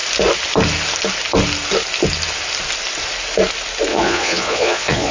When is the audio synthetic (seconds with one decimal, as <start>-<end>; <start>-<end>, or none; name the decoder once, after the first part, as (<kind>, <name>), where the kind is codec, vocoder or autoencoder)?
3.9-5.1 (vocoder, Vocos)